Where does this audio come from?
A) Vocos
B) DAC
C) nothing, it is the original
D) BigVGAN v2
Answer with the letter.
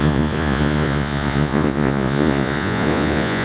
A